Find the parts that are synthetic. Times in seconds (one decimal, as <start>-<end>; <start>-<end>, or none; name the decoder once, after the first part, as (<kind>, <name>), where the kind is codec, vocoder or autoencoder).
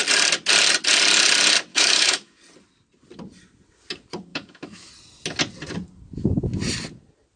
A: 1.7-2.4 (autoencoder, DAC-VAE); 4.3-4.9